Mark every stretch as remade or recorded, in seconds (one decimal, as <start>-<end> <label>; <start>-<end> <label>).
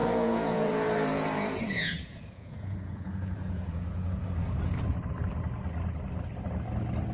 0.0-4.3 remade; 4.3-7.1 recorded